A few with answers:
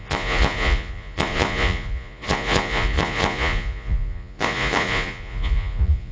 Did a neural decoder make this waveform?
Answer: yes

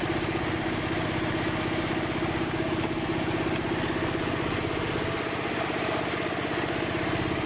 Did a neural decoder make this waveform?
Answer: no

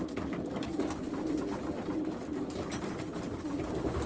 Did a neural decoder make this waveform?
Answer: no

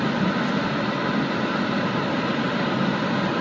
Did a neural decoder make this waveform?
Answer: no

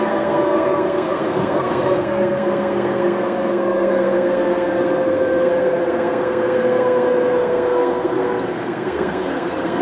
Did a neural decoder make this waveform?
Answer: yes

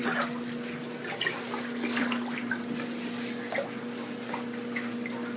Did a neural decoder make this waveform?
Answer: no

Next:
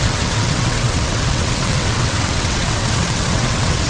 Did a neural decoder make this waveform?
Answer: yes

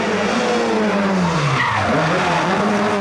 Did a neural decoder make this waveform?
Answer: no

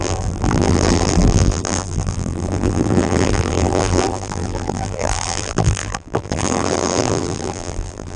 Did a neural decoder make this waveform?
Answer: yes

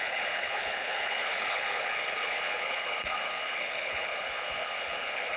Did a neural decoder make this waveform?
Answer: yes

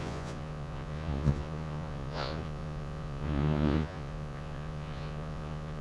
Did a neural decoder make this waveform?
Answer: yes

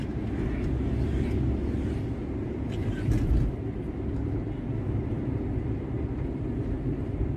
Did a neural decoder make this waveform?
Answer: yes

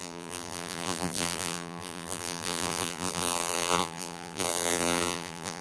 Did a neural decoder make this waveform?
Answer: yes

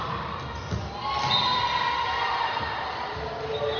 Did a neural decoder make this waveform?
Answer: no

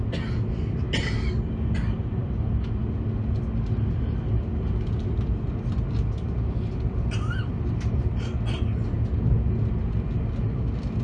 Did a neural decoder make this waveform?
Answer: no